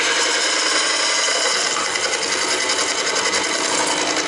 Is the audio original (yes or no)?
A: yes